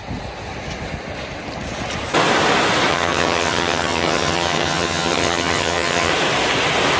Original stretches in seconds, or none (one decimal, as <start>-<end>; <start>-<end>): 0.0-2.9; 6.1-7.0